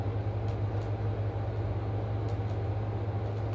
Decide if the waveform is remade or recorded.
recorded